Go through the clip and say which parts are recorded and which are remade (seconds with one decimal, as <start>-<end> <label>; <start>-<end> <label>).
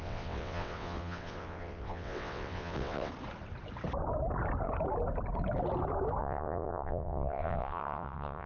0.0-3.1 remade; 3.1-6.2 recorded; 6.2-8.5 remade